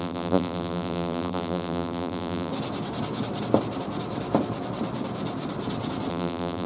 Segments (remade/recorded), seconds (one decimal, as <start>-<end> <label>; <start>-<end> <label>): 0.0-2.5 remade; 2.5-6.1 recorded; 6.1-6.7 remade